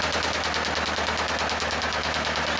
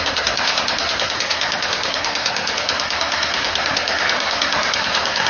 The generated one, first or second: second